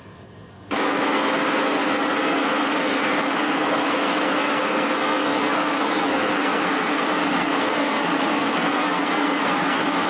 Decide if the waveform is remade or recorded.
remade